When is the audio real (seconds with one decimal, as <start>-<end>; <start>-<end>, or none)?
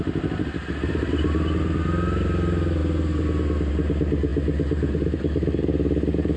0.0-6.4